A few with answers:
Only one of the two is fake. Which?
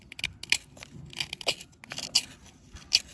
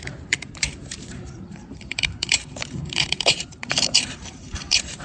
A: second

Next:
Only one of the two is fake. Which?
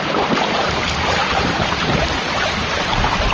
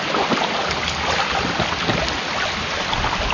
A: first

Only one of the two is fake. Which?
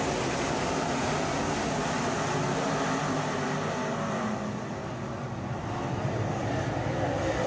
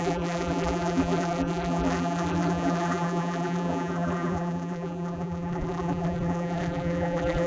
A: second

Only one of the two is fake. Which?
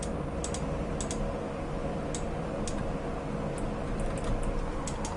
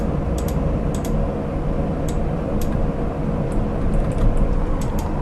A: second